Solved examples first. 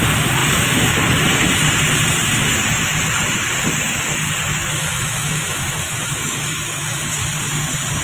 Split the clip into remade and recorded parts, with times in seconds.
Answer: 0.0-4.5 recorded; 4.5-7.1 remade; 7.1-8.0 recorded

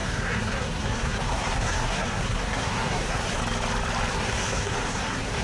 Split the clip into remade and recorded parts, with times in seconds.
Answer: 0.0-3.4 remade; 3.4-4.1 recorded; 4.1-5.4 remade

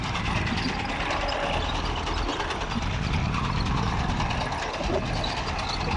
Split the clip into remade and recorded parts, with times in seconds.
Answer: 0.0-6.0 recorded

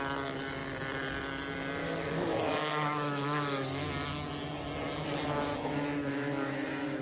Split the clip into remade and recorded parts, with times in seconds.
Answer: 0.0-1.8 recorded; 1.8-3.9 remade; 3.9-6.1 recorded; 6.1-7.0 remade